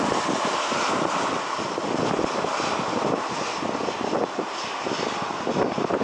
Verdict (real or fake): real